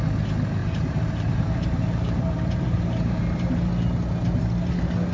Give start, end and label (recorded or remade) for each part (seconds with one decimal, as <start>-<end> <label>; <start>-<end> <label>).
0.0-0.6 recorded; 0.6-3.7 remade; 3.7-5.1 recorded